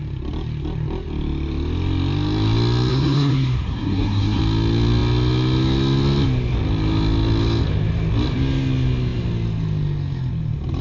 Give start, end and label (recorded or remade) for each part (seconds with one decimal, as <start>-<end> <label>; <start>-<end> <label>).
0.0-2.9 recorded; 2.9-4.4 remade; 4.4-10.8 recorded